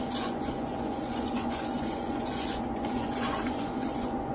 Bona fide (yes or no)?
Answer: no